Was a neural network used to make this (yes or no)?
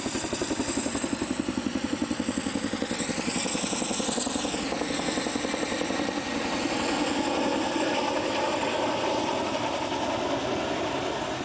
no